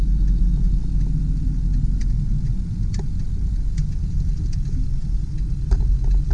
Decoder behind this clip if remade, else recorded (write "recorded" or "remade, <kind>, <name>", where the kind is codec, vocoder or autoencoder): recorded